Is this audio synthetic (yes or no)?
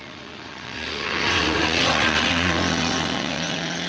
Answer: yes